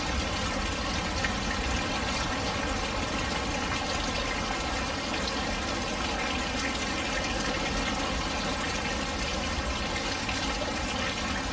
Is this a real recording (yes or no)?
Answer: yes